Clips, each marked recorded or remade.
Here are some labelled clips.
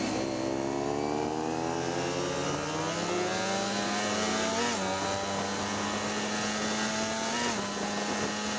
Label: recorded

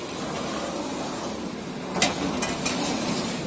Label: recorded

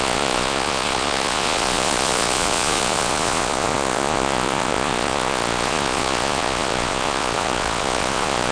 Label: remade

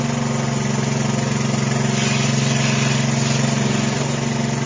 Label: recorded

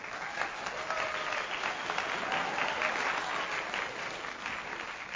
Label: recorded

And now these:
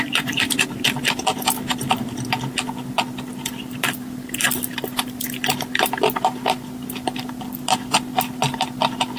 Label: remade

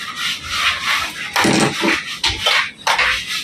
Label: recorded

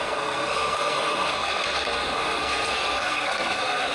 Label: remade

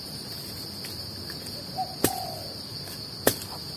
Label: recorded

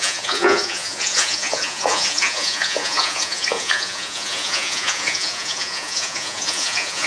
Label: remade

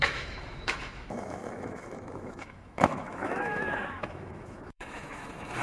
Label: remade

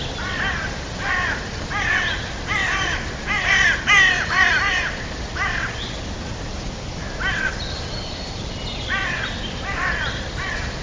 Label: recorded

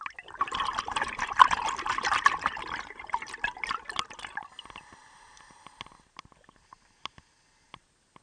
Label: recorded